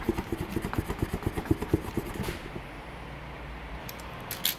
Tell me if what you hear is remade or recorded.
recorded